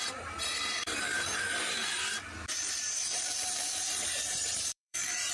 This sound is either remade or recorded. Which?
remade